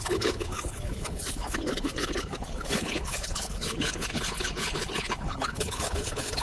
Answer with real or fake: fake